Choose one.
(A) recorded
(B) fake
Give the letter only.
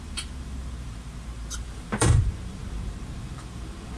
B